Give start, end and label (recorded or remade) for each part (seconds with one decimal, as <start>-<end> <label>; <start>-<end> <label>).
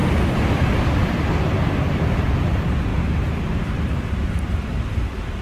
0.0-2.2 remade; 2.2-5.4 recorded